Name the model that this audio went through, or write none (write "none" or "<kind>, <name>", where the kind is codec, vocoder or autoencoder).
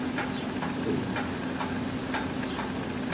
none